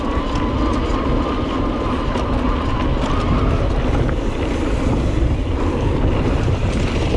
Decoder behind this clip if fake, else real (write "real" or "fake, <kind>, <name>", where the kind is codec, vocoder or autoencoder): real